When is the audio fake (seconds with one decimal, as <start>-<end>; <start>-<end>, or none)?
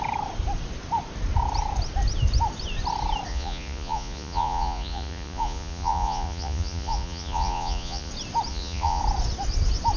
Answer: 3.3-8.1; 8.5-9.0